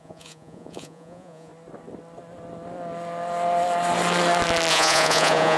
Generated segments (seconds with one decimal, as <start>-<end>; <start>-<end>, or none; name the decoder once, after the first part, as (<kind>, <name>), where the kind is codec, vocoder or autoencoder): 0.0-1.5 (vocoder, Vocos); 4.7-5.6